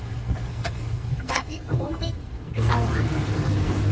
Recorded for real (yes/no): no